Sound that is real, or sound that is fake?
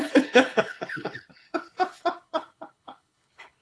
fake